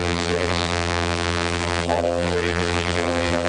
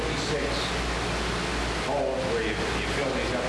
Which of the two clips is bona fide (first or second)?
second